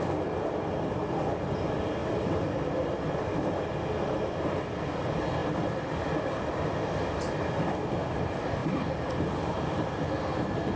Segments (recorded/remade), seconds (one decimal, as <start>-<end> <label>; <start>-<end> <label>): 0.0-2.0 recorded; 2.0-3.0 remade; 3.0-8.6 recorded; 8.6-9.3 remade; 9.3-10.8 recorded